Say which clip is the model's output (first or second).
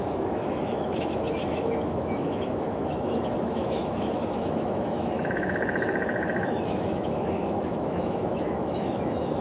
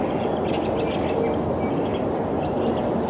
first